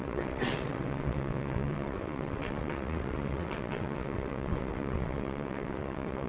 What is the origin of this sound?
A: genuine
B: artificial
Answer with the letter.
B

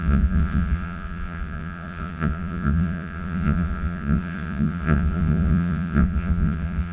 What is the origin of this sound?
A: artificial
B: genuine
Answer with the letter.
A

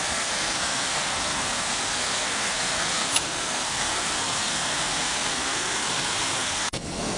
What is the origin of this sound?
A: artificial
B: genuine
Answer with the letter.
A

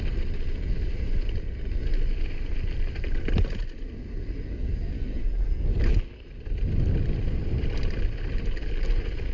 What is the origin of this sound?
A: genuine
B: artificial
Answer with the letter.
A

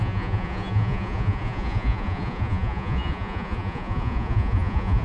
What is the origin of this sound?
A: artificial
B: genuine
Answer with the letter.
A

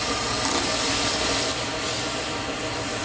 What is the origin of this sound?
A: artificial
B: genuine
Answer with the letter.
A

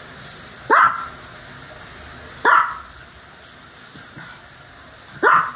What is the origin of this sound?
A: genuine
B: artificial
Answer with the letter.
A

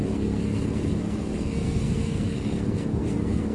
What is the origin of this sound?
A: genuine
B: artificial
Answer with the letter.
B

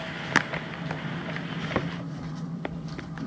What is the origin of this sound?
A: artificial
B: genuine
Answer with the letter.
B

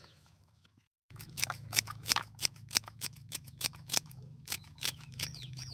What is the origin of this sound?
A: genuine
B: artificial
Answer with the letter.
B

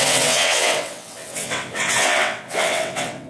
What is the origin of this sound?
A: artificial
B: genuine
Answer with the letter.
A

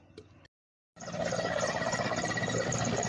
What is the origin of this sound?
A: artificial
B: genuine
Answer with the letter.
B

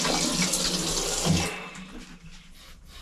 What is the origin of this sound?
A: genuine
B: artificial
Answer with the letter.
A